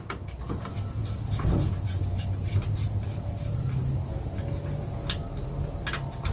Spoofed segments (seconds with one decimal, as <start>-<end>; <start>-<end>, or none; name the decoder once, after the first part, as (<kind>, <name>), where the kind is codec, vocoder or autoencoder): none